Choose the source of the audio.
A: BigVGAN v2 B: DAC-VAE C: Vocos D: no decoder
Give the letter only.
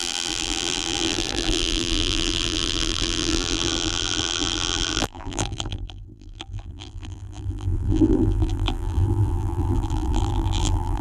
A